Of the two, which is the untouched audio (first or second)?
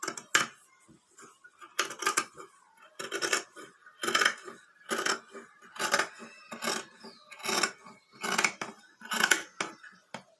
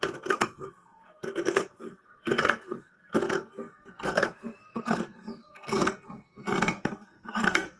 first